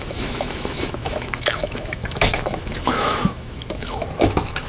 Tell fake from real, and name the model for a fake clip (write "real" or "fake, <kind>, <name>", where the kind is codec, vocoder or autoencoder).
fake, autoencoder, DAC-VAE